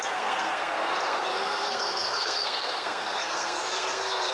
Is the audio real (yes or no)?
no